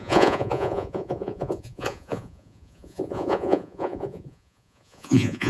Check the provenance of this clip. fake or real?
fake